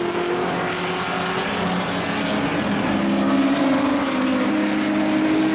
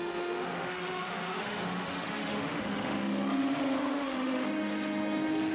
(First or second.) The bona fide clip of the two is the first